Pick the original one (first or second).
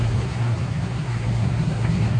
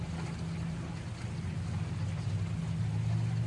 second